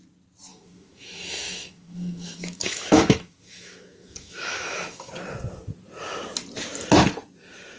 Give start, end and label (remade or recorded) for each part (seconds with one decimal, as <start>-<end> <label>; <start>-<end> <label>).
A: 0.0-0.5 recorded; 0.5-5.1 remade; 5.1-7.8 recorded